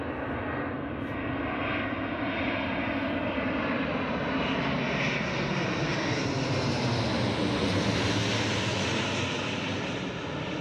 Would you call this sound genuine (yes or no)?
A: yes